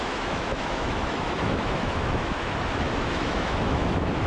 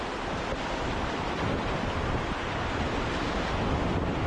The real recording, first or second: second